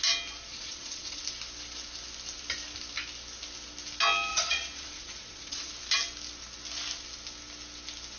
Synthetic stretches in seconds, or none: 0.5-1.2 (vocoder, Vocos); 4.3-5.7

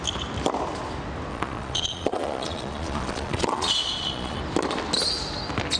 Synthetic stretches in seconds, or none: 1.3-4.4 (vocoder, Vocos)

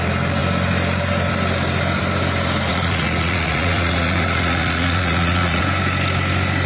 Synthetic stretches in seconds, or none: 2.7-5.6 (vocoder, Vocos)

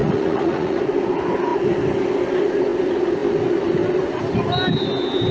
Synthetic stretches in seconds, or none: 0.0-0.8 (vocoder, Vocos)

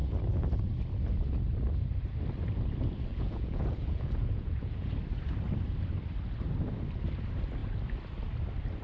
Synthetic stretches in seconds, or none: 3.1-4.9 (vocoder, Vocos)

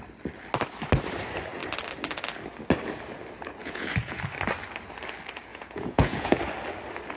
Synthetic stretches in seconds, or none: 3.6-4.2 (vocoder, Vocos); 5.5-6.4

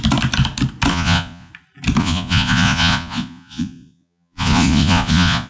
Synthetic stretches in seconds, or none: 0.9-1.5 (vocoder, Vocos); 2.0-5.5